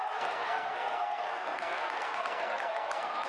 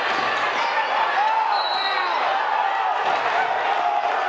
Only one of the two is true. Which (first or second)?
second